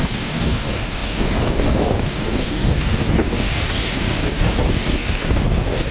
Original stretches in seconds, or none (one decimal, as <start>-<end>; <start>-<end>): none